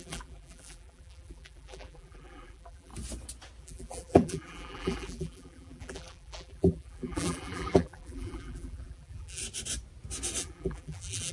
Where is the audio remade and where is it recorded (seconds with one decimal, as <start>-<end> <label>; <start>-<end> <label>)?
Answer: 0.0-2.9 remade; 2.9-3.6 recorded; 3.6-9.4 remade; 9.4-10.4 recorded; 10.4-11.3 remade